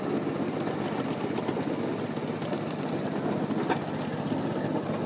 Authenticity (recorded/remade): recorded